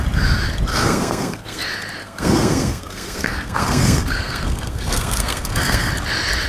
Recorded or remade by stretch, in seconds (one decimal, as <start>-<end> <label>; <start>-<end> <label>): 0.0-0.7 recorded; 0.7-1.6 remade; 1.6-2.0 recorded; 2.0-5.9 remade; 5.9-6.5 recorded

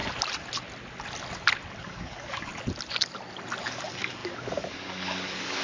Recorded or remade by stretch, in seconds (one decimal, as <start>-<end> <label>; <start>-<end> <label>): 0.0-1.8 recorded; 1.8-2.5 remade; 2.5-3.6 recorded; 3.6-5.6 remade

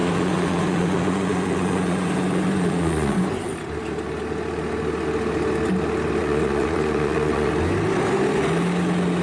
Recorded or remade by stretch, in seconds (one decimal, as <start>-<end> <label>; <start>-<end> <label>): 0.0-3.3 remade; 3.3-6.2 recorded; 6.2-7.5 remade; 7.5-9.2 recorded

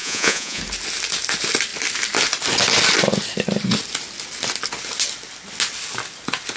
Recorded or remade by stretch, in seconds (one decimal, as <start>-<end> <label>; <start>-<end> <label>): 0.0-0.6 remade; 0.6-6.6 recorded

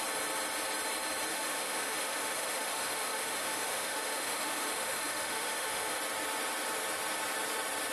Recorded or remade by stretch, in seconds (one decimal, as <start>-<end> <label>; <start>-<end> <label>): 0.0-1.3 recorded; 1.3-6.0 remade; 6.0-7.9 recorded